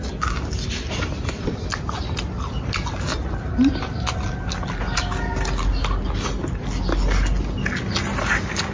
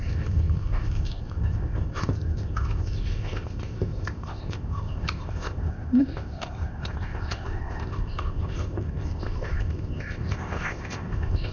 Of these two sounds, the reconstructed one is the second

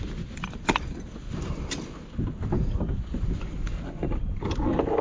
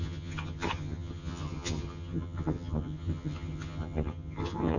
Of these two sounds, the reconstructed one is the second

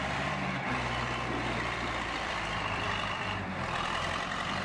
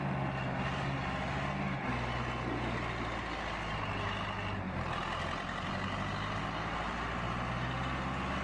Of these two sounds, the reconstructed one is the first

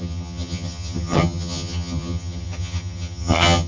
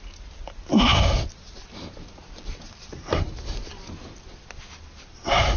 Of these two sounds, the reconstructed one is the first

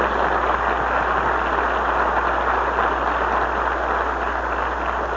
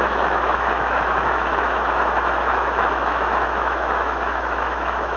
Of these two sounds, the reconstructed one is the second